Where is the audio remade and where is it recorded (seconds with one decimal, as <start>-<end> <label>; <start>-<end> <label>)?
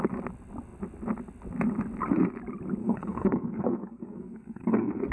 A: 0.0-2.8 recorded; 2.8-5.1 remade